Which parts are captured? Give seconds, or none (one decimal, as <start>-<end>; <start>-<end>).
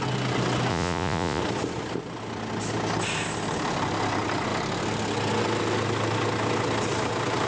0.0-0.7; 1.4-7.5